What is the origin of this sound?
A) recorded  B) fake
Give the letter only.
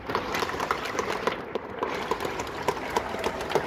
A